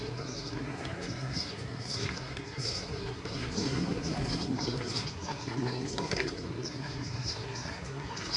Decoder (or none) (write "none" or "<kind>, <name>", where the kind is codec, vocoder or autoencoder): codec, SNAC